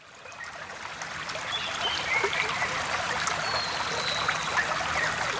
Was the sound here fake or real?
real